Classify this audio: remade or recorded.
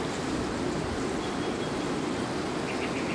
recorded